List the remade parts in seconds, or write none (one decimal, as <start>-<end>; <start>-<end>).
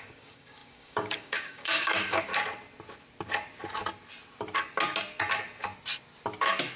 0.0-2.3